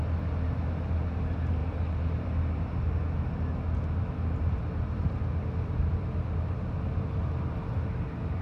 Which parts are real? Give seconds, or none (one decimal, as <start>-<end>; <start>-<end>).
0.0-8.4